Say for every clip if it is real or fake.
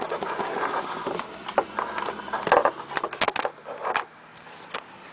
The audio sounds real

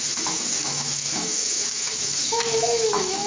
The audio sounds fake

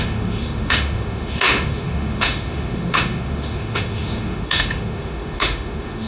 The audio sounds fake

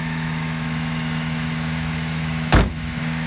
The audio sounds fake